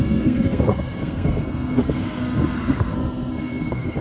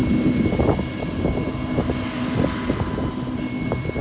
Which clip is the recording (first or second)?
second